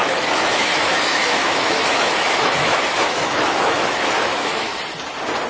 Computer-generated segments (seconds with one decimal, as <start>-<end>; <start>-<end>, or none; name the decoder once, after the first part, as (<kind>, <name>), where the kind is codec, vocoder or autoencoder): 0.0-4.7 (autoencoder, DAC-VAE)